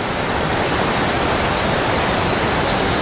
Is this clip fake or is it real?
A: real